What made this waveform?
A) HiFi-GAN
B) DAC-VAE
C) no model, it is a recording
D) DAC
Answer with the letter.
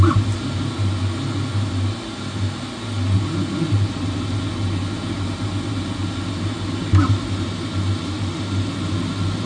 C